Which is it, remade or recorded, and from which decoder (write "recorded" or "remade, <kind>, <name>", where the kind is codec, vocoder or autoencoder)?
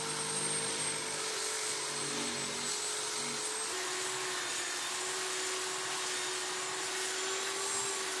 recorded